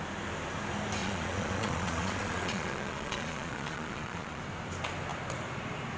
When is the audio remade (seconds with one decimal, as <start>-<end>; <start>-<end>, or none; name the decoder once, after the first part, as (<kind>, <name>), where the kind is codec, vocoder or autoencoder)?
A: 1.0-4.4 (vocoder, Vocos)